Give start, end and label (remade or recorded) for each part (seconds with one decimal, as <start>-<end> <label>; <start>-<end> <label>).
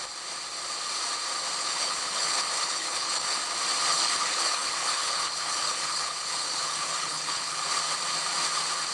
0.0-1.6 recorded; 1.6-3.4 remade; 3.4-3.9 recorded; 3.9-7.8 remade; 7.8-8.9 recorded